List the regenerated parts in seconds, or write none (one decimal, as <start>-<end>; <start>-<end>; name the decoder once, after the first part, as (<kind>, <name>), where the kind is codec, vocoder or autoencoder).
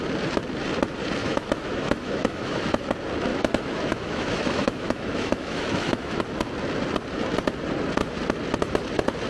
1.2-2.8 (autoencoder, DAC-VAE); 3.3-6.2